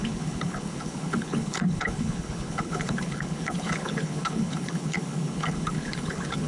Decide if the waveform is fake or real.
fake